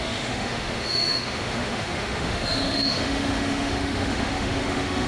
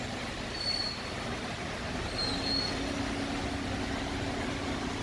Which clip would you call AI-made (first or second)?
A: first